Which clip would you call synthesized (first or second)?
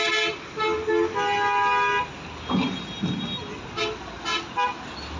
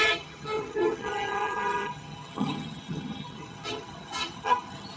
second